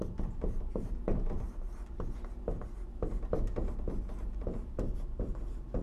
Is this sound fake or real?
fake